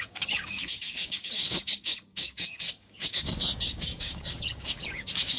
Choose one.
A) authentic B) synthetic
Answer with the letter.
B